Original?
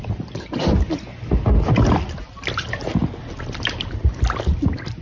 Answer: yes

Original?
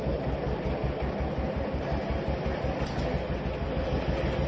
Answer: yes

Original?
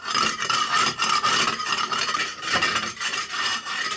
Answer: no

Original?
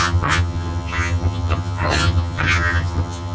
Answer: no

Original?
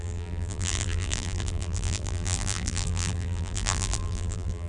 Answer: no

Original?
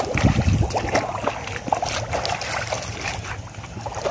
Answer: yes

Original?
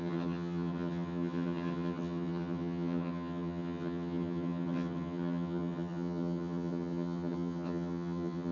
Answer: no